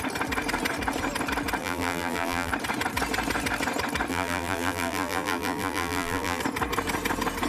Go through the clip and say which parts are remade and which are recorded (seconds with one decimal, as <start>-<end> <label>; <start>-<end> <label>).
0.0-1.6 recorded; 1.6-2.5 remade; 2.5-4.1 recorded; 4.1-6.4 remade; 6.4-7.5 recorded